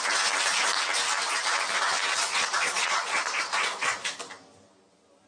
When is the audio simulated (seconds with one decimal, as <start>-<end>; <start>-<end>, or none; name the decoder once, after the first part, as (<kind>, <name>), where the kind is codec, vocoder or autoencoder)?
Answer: 2.2-4.2 (vocoder, Vocos)

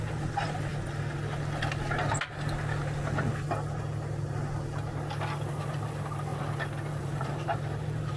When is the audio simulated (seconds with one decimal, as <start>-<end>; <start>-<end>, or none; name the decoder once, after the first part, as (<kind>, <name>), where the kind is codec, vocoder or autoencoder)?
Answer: 0.0-0.7 (vocoder, BigVGAN v2); 5.6-6.3; 6.9-8.2

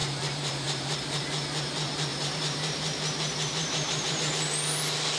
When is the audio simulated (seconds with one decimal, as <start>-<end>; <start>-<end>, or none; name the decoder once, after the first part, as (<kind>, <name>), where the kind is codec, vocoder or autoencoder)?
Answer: 0.0-1.2 (vocoder, BigVGAN v2); 2.1-4.8

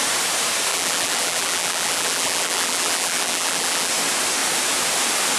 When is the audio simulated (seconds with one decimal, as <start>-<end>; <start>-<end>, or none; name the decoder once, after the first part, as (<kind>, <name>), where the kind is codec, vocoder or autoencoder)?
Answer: 0.7-3.9 (vocoder, BigVGAN v2)

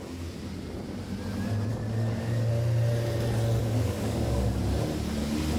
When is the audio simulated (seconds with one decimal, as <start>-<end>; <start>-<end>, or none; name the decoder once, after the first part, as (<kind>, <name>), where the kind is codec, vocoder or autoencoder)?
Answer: 1.7-2.5 (codec, DAC); 3.6-4.6